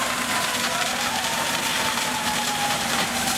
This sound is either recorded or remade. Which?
remade